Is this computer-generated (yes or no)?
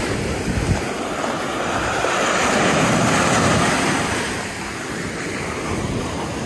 no